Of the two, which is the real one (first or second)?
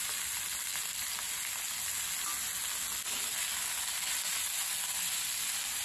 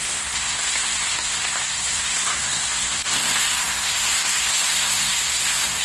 first